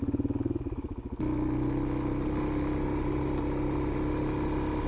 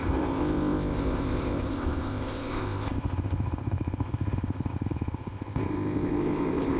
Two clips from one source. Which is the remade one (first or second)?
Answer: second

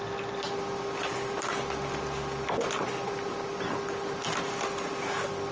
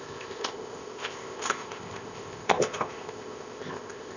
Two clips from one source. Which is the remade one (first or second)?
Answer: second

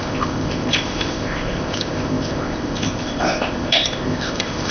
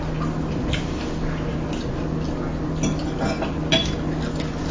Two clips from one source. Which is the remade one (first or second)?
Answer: first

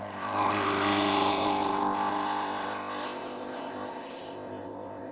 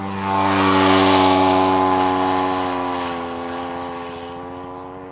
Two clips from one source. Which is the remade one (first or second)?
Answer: first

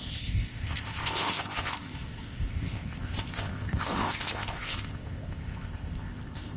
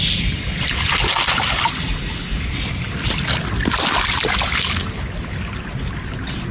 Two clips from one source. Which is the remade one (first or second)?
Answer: first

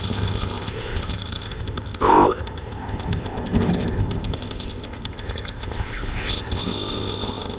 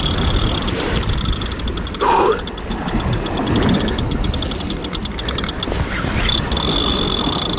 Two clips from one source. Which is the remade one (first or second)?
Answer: first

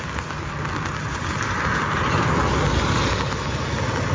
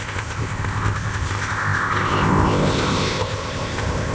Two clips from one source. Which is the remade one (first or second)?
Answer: second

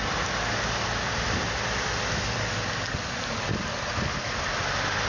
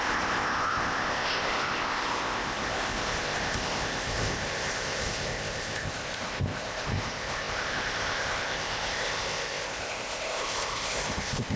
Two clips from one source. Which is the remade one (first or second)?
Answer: second